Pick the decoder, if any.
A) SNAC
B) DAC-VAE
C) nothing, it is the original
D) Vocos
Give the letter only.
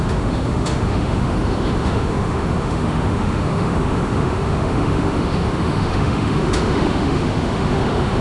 B